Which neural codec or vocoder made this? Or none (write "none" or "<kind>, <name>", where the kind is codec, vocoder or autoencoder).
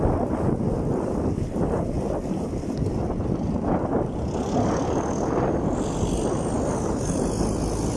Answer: none